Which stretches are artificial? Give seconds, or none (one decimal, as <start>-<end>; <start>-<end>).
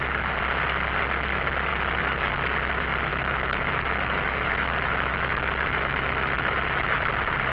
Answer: 1.7-2.3; 3.1-7.1